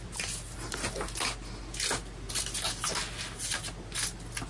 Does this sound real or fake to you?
real